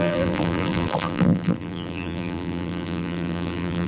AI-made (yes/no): yes